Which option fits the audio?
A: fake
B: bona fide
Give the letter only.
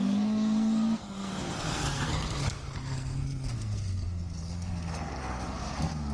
A